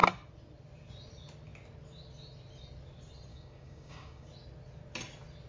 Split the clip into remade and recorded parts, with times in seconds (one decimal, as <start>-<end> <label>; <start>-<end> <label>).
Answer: 0.0-3.3 recorded; 3.3-4.3 remade; 4.3-5.5 recorded